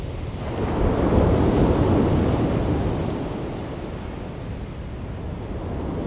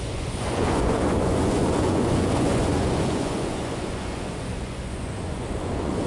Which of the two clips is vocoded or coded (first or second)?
second